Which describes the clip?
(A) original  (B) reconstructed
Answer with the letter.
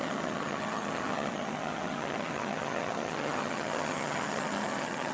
B